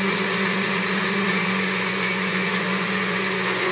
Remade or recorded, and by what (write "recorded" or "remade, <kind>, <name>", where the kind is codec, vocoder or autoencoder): remade, vocoder, Vocos